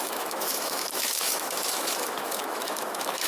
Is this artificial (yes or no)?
yes